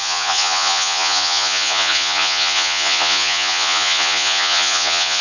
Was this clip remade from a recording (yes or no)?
yes